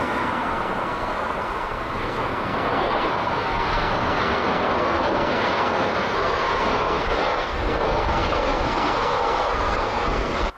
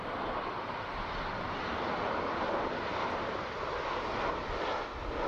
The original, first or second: second